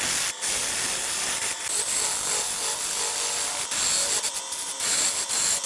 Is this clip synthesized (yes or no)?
no